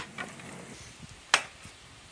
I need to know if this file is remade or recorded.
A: recorded